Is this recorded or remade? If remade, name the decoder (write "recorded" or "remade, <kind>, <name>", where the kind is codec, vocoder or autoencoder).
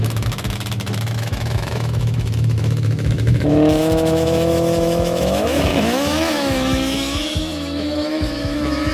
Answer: remade, autoencoder, DAC-VAE